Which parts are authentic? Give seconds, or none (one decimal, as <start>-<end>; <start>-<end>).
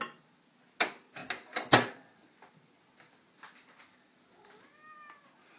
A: 0.0-5.6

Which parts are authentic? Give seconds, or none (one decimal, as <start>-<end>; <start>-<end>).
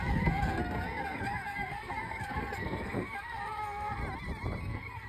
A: 4.0-4.6